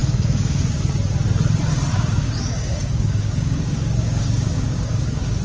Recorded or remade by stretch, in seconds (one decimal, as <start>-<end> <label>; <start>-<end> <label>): 0.0-0.6 remade; 0.6-1.9 recorded; 1.9-5.4 remade